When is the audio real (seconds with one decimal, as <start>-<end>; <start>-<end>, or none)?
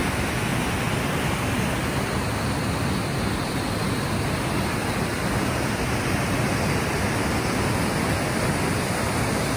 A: 0.0-9.6